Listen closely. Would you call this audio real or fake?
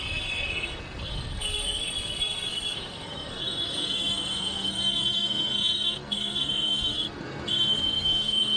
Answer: fake